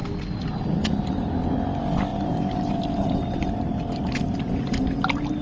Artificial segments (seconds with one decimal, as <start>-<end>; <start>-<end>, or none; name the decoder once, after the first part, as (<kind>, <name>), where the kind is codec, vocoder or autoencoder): 2.1-4.5 (vocoder, BigVGAN v2)